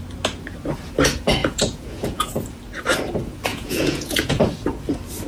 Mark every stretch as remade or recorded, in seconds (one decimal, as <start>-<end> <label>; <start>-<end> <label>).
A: 0.0-1.4 recorded; 1.4-2.3 remade; 2.3-3.5 recorded; 3.5-4.4 remade; 4.4-5.3 recorded